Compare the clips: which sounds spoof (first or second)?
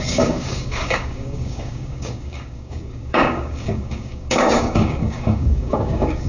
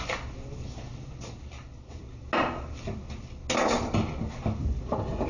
first